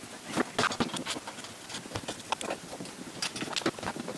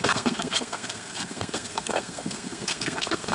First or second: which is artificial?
second